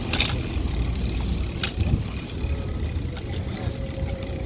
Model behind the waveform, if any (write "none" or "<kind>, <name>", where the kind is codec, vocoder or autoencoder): none